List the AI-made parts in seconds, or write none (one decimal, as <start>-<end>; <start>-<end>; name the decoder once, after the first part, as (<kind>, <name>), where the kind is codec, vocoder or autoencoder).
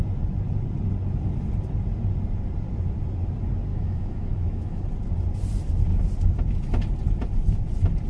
3.7-4.8 (autoencoder, DAC-VAE)